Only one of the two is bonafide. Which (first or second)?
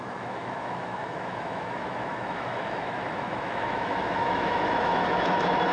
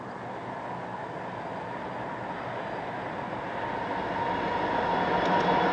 second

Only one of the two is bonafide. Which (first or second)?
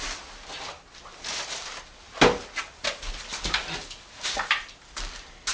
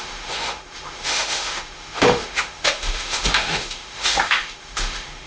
first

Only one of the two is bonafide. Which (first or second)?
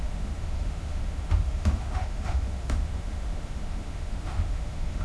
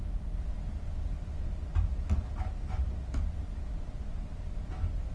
second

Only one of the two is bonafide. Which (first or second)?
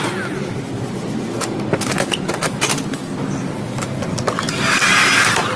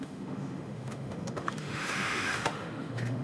first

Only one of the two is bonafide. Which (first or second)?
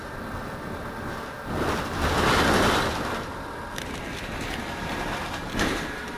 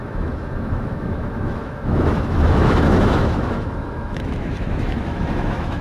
first